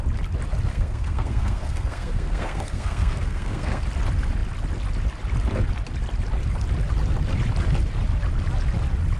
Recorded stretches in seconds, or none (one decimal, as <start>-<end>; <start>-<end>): 0.0-0.7; 3.8-9.2